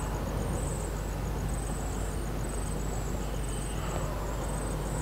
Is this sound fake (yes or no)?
no